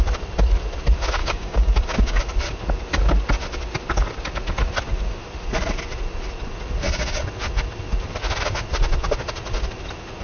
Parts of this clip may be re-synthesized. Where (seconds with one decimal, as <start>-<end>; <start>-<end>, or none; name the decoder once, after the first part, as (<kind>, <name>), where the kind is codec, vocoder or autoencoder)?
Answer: 1.2-2.2 (codec, DAC)